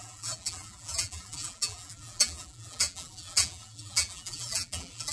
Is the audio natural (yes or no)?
no